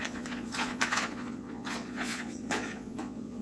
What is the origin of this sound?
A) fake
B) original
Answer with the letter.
A